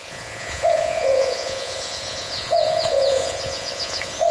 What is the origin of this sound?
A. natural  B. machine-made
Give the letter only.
B